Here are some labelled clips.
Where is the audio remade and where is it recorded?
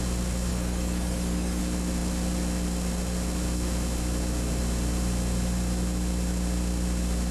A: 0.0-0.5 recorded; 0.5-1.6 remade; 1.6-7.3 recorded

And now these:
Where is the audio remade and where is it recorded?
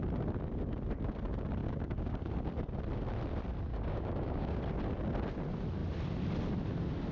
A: 0.0-1.6 recorded; 1.6-2.3 remade; 2.3-3.7 recorded; 3.7-4.6 remade; 4.6-7.1 recorded